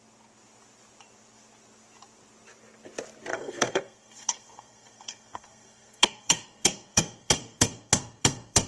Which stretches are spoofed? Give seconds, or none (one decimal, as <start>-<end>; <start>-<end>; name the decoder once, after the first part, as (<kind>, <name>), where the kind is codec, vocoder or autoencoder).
3.3-8.7 (codec, SNAC)